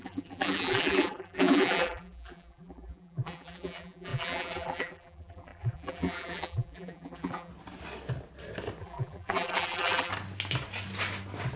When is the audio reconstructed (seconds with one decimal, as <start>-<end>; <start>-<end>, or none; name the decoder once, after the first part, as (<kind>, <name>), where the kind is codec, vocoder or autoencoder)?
0.0-7.5 (vocoder, BigVGAN v2); 8.8-10.1